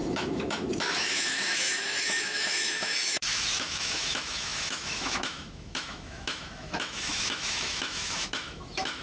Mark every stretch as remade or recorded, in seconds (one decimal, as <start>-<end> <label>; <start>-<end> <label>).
0.0-9.0 remade